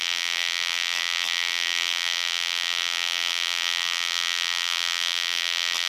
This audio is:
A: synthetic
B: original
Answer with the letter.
A